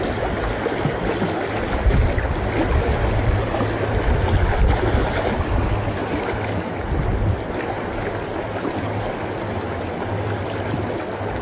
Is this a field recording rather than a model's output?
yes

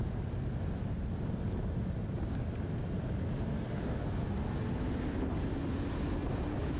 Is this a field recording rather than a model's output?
yes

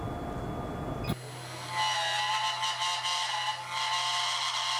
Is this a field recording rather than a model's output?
yes